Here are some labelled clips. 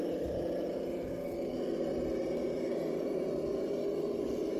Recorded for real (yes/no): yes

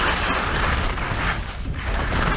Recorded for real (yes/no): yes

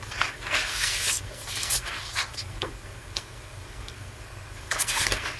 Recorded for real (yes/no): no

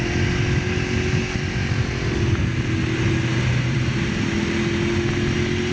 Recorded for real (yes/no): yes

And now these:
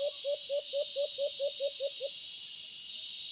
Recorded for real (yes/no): yes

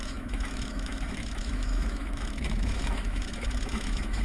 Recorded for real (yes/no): no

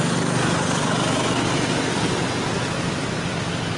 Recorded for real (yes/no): yes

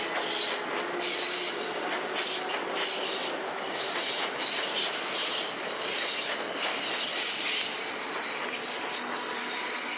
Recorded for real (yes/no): yes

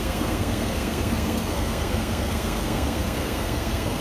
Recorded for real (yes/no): no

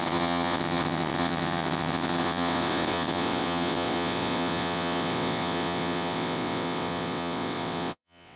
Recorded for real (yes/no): no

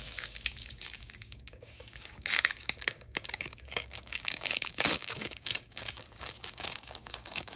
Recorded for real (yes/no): no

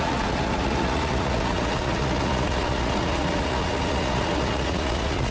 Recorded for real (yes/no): no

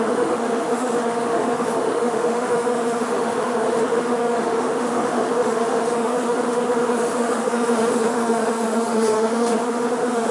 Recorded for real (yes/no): no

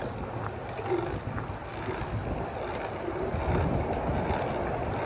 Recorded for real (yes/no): yes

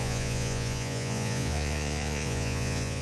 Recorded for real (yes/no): no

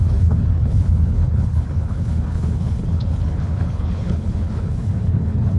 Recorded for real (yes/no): no